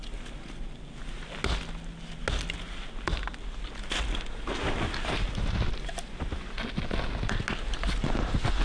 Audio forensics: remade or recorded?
recorded